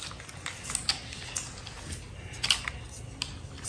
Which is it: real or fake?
real